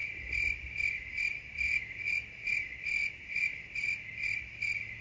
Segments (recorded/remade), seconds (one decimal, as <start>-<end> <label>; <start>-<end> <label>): 0.0-1.1 remade; 1.1-5.0 recorded